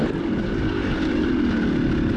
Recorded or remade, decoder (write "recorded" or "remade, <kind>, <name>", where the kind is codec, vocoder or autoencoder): recorded